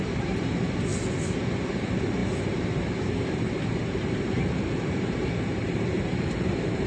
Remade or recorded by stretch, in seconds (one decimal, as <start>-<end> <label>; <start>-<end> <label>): 0.0-0.9 remade; 0.9-1.7 recorded; 1.7-6.9 remade